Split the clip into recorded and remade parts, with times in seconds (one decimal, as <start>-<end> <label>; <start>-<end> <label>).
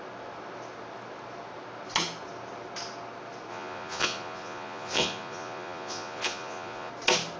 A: 0.0-3.5 recorded; 3.5-6.9 remade; 6.9-7.4 recorded